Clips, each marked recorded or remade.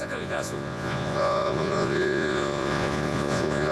remade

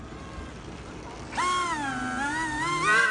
recorded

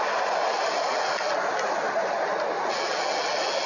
recorded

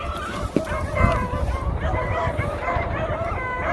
remade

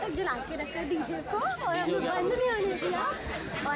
recorded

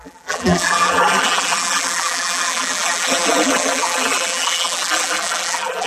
remade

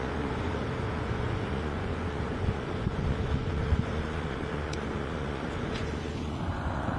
remade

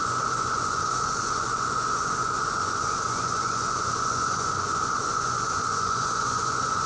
remade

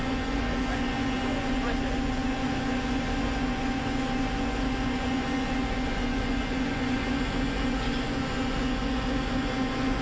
remade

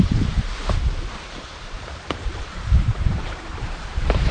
remade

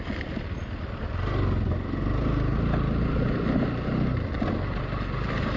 recorded